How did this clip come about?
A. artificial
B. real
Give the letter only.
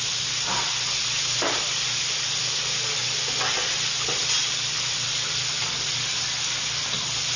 B